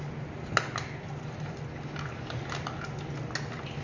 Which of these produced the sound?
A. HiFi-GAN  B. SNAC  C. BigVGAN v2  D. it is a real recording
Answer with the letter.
D